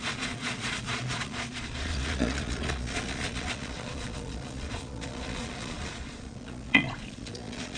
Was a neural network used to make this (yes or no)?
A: yes